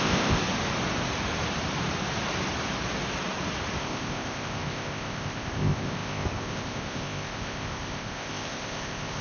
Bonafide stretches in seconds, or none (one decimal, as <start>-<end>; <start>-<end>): 0.4-3.8

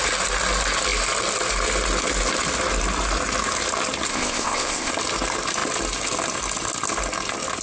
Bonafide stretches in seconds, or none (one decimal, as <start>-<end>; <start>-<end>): 0.0-4.1; 4.9-7.6

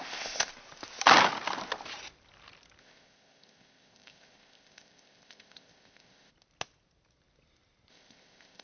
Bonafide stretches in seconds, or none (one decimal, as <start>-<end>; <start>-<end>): 0.5-2.8; 6.3-7.9

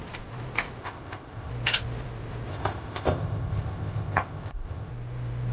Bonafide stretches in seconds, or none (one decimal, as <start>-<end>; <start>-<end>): 0.0-0.8; 1.5-2.5; 4.9-5.5

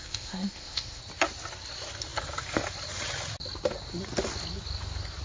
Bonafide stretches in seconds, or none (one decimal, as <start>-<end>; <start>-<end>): 1.0-5.2

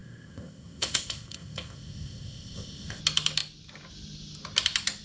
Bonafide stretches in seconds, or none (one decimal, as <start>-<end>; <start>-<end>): 3.0-5.0